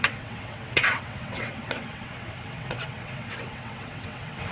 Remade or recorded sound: remade